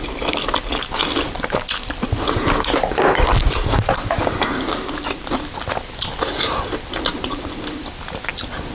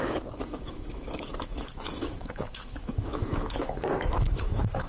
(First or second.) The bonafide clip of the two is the first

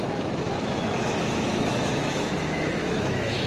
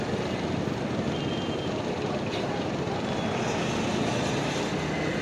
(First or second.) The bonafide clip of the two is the second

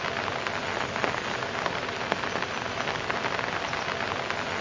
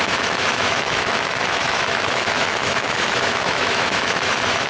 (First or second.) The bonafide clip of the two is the first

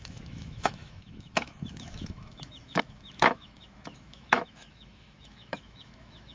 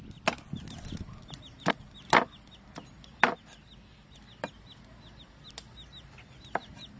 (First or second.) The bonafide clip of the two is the second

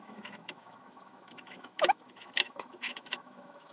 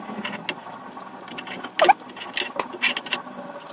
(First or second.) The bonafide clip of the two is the second